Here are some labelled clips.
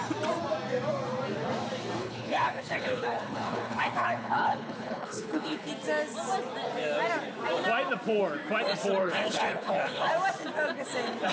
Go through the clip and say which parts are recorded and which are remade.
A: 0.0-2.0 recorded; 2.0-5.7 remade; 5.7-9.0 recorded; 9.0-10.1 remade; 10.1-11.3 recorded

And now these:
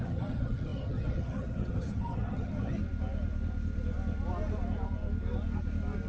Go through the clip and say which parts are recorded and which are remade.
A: 0.0-2.8 remade; 2.8-6.1 recorded

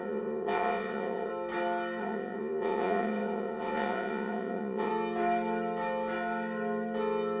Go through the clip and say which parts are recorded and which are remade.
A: 0.0-1.3 remade; 1.3-2.0 recorded; 2.0-4.9 remade; 4.9-7.4 recorded

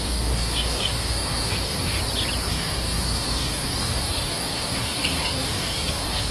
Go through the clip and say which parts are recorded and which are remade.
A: 0.0-2.0 remade; 2.0-2.5 recorded; 2.5-6.3 remade

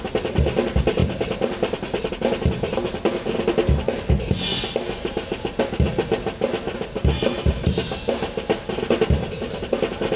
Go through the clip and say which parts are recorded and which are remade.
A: 0.0-10.2 recorded

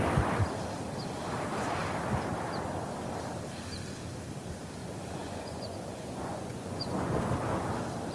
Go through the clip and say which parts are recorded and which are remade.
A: 0.0-4.8 recorded; 4.8-7.2 remade; 7.2-8.1 recorded